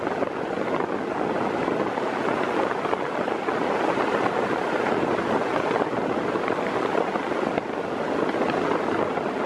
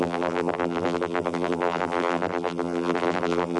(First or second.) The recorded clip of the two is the first